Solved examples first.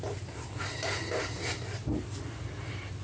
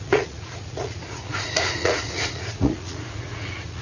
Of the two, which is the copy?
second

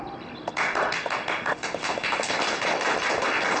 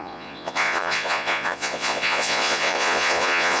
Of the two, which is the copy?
second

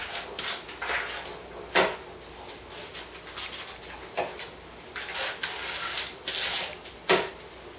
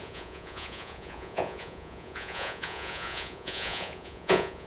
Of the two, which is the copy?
second